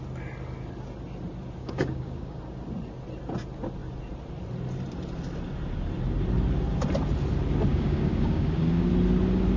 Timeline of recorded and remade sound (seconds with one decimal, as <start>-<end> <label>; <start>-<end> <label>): 0.0-1.6 recorded; 1.6-2.4 remade; 2.4-7.7 recorded; 7.7-8.9 remade; 8.9-9.6 recorded